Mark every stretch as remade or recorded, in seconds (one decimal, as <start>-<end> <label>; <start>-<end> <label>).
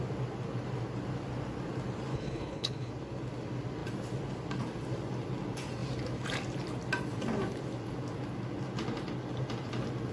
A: 0.0-2.1 recorded; 2.1-2.9 remade; 2.9-10.1 recorded